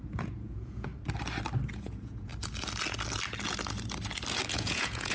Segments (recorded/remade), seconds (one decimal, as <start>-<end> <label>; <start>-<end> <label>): 0.0-0.9 remade; 0.9-1.7 recorded; 1.7-2.3 remade; 2.3-4.5 recorded; 4.5-5.1 remade